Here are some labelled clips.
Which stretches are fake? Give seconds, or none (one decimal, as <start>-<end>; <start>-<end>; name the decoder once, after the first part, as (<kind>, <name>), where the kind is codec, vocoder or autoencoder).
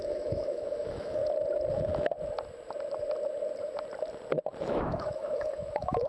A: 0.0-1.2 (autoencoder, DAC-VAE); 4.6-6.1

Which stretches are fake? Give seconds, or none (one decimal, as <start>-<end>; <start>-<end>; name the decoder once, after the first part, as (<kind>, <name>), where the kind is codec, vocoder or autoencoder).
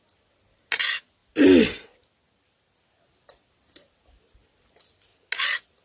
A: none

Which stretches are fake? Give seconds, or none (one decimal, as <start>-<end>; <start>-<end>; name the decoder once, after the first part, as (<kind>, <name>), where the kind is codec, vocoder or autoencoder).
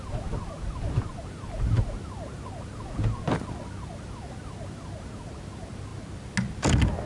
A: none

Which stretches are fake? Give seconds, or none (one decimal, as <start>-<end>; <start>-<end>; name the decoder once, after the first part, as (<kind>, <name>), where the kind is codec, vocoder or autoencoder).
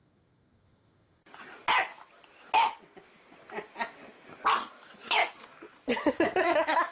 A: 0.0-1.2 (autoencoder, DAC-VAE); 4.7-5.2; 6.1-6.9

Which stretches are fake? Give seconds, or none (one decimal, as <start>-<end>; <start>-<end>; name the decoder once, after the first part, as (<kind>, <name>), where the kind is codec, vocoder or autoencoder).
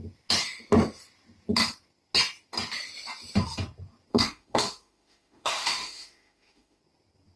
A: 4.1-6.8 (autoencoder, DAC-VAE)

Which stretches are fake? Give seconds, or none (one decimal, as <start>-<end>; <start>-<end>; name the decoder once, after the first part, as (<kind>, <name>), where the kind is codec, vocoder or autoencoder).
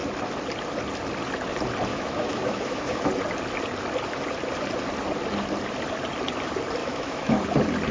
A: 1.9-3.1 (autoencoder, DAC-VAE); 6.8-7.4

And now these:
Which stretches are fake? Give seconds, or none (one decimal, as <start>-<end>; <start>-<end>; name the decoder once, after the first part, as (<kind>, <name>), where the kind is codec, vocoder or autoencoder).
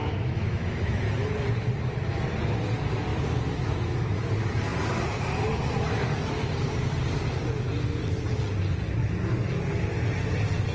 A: 0.0-1.1 (autoencoder, DAC-VAE); 3.1-4.3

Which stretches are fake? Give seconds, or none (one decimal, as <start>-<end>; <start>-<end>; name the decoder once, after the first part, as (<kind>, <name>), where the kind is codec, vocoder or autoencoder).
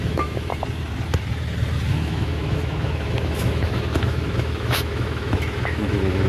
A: 0.0-0.5 (autoencoder, DAC-VAE); 1.9-6.3